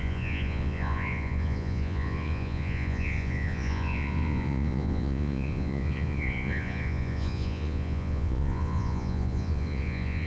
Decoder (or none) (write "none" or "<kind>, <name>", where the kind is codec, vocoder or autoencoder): vocoder, Vocos